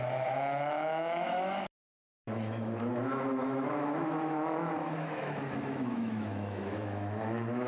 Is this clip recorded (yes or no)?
no